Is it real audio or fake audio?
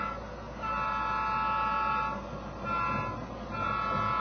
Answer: real